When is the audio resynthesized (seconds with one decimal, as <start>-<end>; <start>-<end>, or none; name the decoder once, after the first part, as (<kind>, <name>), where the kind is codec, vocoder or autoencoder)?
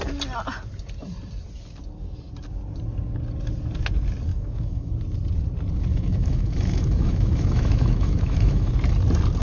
4.3-4.9 (autoencoder, DAC-VAE); 5.9-8.7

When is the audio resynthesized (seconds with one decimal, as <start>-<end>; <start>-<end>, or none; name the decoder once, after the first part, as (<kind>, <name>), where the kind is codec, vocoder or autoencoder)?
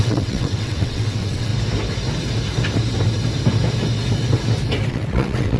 0.0-1.5 (vocoder, WaveNeXt); 4.9-5.6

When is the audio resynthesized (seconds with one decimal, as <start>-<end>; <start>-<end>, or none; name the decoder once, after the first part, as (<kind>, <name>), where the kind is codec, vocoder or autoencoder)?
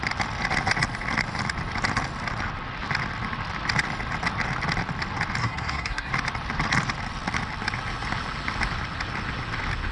5.4-6.1 (codec, SNAC)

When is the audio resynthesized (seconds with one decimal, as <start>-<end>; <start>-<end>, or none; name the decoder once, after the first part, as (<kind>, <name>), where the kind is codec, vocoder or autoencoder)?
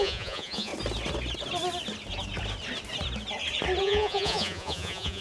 0.0-0.7 (vocoder, Vocos); 3.8-5.2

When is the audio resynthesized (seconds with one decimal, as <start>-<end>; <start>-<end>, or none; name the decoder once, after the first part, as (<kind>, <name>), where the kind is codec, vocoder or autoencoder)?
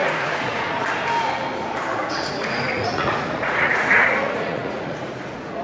0.0-0.7 (vocoder, Vocos); 2.0-5.6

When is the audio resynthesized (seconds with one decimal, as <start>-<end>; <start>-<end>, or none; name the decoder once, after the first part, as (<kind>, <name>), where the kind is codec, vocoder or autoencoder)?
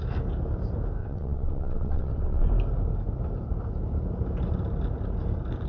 1.0-2.5 (vocoder, WaveNeXt)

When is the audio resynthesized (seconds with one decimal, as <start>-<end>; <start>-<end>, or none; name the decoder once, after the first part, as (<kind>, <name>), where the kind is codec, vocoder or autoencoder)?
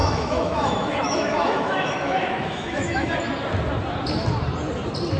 0.0-3.1 (autoencoder, DAC-VAE)